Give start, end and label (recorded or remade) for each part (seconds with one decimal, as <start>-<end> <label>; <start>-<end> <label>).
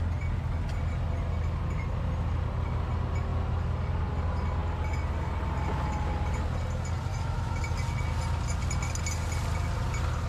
0.0-7.1 recorded; 7.1-7.6 remade; 7.6-10.3 recorded